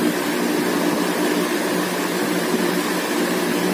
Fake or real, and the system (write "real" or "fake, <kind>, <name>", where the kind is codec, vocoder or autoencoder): real